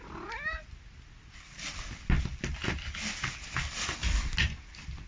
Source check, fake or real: real